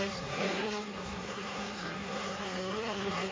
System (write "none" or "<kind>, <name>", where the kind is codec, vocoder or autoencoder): codec, SNAC